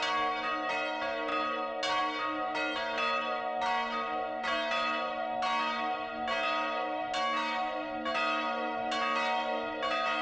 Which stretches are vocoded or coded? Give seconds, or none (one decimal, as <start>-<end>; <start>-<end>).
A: none